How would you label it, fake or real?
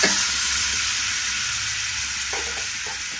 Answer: real